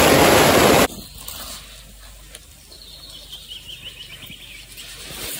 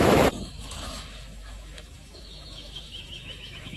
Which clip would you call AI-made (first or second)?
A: second